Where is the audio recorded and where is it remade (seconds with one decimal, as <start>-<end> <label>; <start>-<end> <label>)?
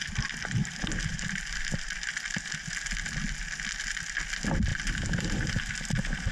0.0-6.3 recorded